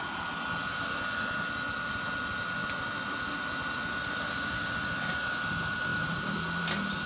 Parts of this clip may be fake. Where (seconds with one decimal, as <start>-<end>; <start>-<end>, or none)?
none